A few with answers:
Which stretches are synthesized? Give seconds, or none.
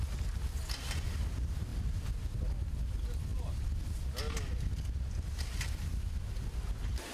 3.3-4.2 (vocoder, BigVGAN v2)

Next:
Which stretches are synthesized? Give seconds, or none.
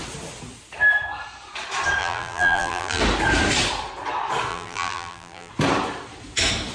2.0-3.0 (vocoder, BigVGAN v2); 4.5-5.5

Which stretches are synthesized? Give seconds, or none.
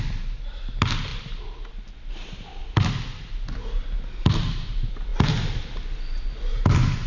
none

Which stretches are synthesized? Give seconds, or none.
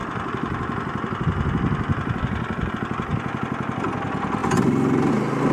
0.0-2.7 (vocoder, BigVGAN v2)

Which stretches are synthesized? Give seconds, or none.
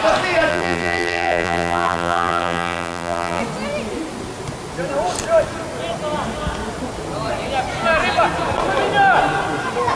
0.5-3.4 (vocoder, BigVGAN v2)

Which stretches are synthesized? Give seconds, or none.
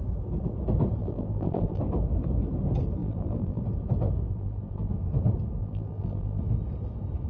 1.0-1.8 (vocoder, BigVGAN v2); 3.0-3.6; 4.3-4.9; 5.6-6.4